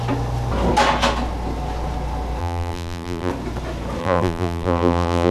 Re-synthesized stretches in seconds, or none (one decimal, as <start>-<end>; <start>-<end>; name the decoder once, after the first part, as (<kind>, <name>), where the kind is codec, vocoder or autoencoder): 2.4-3.3 (vocoder, BigVGAN v2); 4.0-5.3

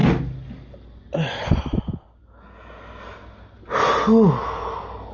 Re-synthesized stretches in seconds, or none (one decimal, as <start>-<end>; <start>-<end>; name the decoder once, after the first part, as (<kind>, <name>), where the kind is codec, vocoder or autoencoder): none

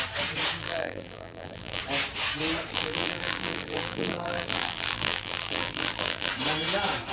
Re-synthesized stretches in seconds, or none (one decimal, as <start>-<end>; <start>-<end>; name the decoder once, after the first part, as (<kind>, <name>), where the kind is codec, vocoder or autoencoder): 0.6-1.8 (vocoder, BigVGAN v2); 2.7-6.3

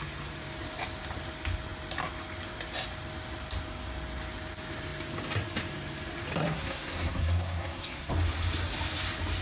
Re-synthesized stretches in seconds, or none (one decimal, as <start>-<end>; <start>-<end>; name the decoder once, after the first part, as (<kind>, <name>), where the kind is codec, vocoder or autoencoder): 6.4-8.1 (codec, SNAC)

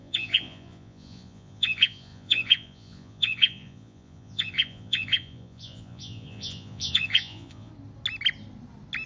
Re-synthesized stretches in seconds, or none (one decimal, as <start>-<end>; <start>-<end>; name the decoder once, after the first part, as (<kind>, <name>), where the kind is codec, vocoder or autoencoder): 0.0-7.7 (vocoder, Vocos)